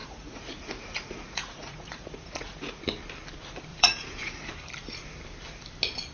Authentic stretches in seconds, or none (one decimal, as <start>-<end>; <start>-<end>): 2.8-3.7; 4.5-6.1